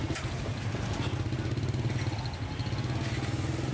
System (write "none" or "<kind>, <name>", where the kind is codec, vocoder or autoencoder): none